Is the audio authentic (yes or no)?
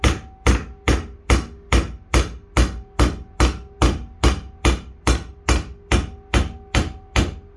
yes